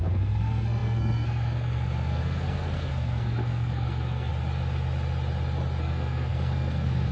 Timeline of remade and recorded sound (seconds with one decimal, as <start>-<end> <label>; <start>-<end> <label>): 0.0-4.3 remade; 4.3-5.8 recorded; 5.8-7.1 remade